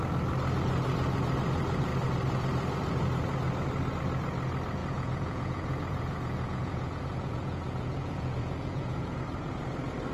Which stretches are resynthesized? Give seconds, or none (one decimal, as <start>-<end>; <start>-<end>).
4.8-9.2